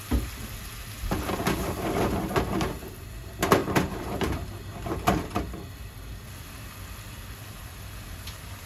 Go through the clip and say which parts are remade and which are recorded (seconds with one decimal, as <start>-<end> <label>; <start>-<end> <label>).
0.0-3.6 recorded; 3.6-4.3 remade; 4.3-7.6 recorded; 7.6-8.7 remade